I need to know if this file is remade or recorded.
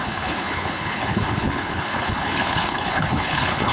remade